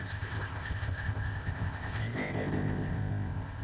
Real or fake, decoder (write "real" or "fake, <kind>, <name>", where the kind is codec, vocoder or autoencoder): fake, codec, ZipCodec